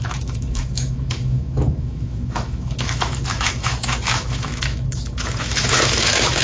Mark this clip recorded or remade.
remade